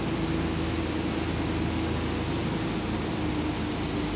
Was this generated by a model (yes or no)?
no